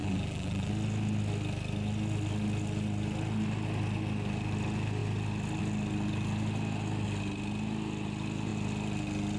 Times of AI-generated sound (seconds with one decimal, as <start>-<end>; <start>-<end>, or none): 0.0-0.7